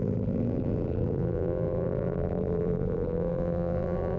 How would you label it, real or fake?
fake